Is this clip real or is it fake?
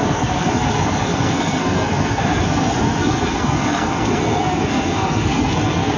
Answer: fake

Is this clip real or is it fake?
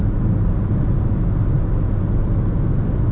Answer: real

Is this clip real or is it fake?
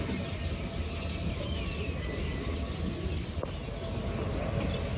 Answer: real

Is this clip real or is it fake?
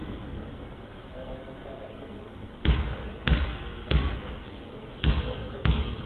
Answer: fake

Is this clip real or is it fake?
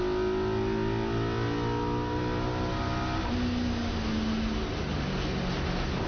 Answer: real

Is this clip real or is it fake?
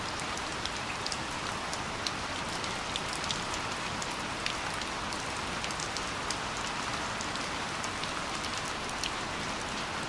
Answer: real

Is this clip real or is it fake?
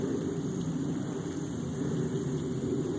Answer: real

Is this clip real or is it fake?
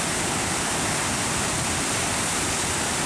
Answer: real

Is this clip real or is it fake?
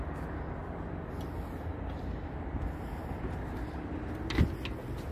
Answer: real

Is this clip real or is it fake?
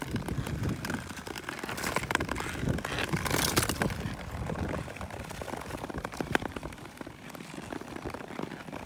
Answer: real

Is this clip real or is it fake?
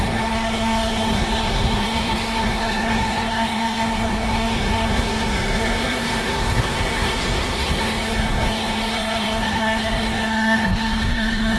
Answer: fake